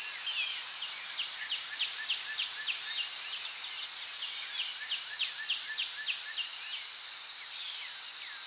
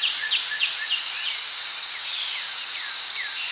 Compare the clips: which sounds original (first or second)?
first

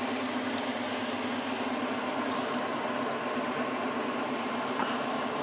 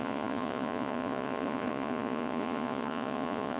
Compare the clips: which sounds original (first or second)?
first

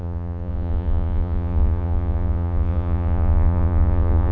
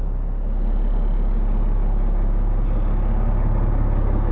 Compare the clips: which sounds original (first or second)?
second